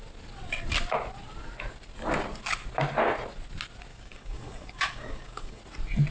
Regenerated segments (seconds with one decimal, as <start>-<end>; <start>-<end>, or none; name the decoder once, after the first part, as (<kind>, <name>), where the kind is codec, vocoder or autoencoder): 3.9-5.6 (codec, DAC)